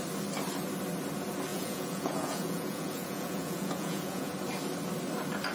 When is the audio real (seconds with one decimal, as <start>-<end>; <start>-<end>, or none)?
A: 0.0-1.5; 4.3-5.5